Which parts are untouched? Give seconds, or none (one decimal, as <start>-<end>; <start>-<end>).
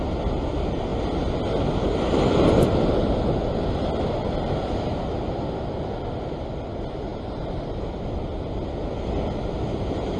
0.0-10.2